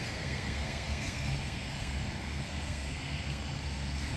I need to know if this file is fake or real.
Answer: fake